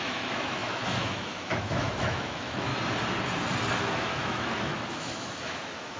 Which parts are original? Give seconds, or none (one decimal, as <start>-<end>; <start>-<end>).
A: 2.7-3.8